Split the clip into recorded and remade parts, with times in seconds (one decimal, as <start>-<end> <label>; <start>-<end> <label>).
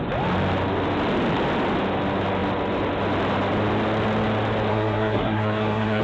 0.0-4.7 recorded; 4.7-6.0 remade